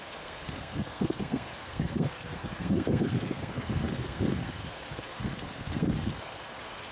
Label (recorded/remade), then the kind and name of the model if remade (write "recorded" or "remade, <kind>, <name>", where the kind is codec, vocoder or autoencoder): remade, codec, SNAC